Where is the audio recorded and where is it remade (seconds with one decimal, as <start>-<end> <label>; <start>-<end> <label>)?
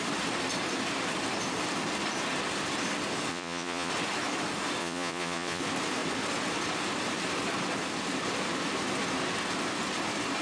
0.0-3.3 recorded; 3.3-3.9 remade; 3.9-4.8 recorded; 4.8-5.6 remade; 5.6-10.4 recorded